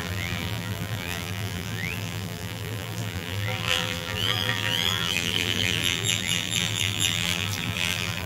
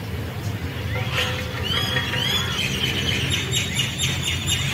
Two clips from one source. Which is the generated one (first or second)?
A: first